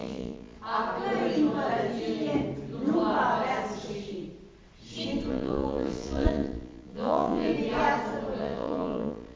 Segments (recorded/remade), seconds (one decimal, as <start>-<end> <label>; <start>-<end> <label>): 0.0-0.6 remade; 0.6-5.3 recorded; 5.3-7.5 remade; 7.5-8.4 recorded; 8.4-9.4 remade